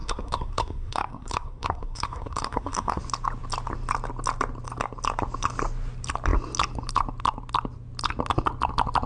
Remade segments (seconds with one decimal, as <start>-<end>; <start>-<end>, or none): 0.0-3.0